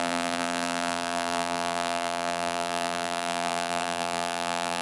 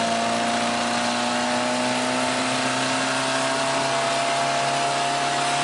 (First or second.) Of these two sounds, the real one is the second